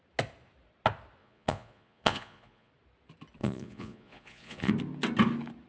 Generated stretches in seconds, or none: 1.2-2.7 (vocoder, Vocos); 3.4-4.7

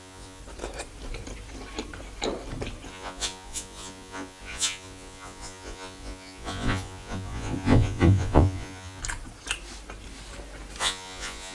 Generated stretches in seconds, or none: 0.0-0.4 (vocoder, Vocos); 2.9-9.0; 10.8-11.5

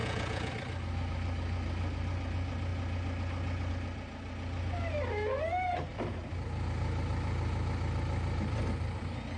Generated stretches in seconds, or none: 0.0-0.5 (vocoder, Vocos)

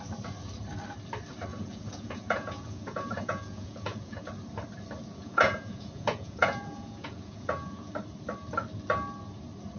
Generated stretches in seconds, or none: 1.5-4.3 (vocoder, Vocos); 5.1-7.9

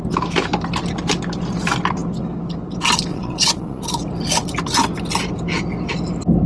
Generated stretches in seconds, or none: 3.1-3.8 (vocoder, Vocos)